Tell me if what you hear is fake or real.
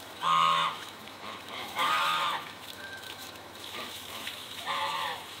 fake